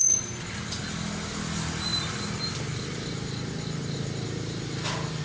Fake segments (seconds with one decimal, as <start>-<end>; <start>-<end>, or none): none